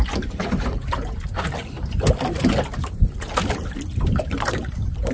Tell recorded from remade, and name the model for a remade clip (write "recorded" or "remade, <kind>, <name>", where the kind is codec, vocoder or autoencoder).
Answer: recorded